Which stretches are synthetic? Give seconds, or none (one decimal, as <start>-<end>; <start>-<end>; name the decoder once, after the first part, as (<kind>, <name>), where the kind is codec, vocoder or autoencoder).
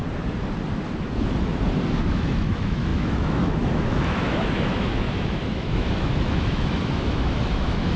2.1-8.0 (autoencoder, DAC-VAE)